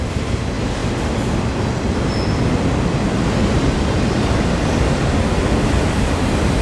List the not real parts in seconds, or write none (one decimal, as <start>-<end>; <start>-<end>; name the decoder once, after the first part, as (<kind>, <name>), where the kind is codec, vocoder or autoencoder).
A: none